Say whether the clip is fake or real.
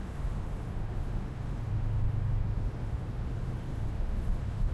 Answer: fake